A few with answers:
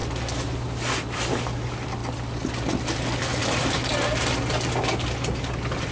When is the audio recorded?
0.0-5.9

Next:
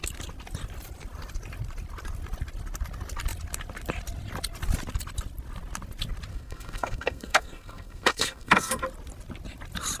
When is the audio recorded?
0.0-6.3; 8.8-10.0

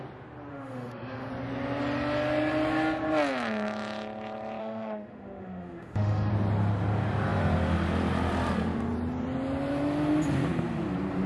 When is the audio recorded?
0.0-0.5; 1.3-4.6; 6.3-11.3

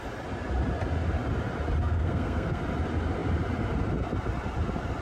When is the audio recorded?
0.0-1.8; 2.6-5.0